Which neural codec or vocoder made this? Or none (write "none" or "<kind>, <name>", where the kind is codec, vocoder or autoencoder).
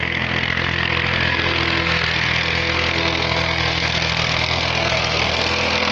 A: codec, SNAC